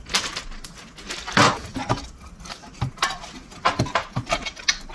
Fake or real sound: real